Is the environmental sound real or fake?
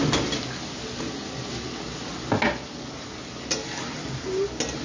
real